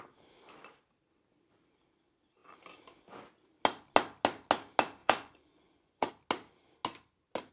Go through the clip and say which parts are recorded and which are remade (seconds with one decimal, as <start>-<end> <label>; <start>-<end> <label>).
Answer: 0.0-5.0 recorded; 5.0-6.1 remade; 6.1-7.5 recorded